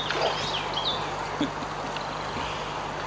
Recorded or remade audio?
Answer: recorded